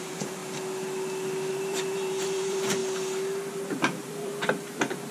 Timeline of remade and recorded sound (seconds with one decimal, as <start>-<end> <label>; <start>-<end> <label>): 0.0-0.4 remade; 0.4-1.5 recorded; 1.5-2.8 remade; 2.8-3.5 recorded; 3.5-5.1 remade